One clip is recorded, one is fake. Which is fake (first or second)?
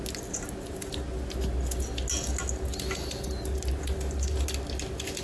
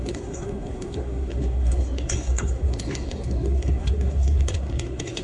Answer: second